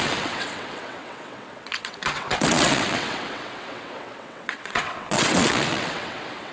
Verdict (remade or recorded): remade